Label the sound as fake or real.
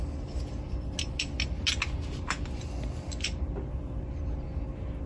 real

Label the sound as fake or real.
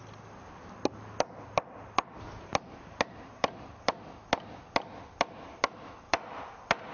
real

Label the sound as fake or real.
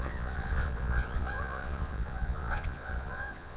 fake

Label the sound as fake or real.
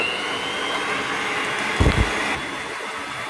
real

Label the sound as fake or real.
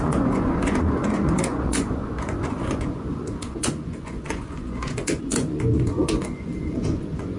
fake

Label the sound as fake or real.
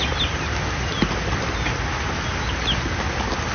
real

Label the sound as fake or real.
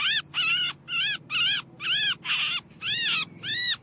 real